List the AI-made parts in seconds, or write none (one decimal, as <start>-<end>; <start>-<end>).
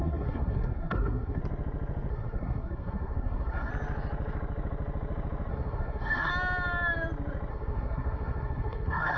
0.0-1.4; 2.1-3.7; 5.5-6.3; 7.5-9.2